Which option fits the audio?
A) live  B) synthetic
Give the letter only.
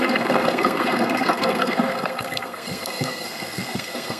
B